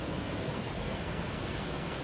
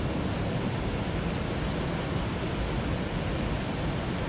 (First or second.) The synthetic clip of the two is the first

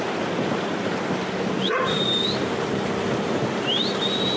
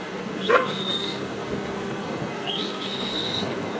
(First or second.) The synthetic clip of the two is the second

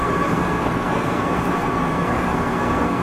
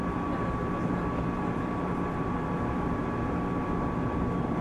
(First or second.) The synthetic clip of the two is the first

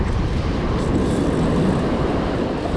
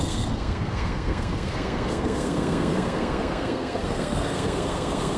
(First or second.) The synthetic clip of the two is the second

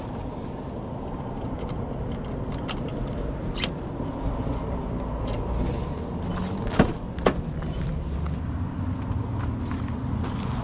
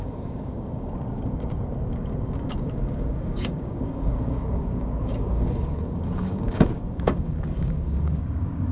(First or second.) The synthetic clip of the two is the second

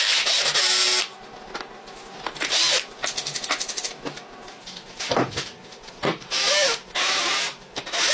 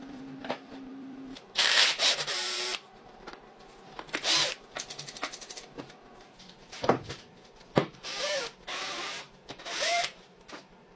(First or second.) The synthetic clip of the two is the second